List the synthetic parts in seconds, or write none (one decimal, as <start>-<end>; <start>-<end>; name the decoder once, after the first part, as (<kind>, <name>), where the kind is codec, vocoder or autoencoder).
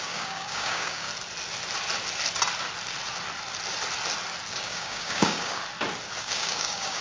0.0-1.1 (codec, DAC); 4.5-5.6; 6.2-7.0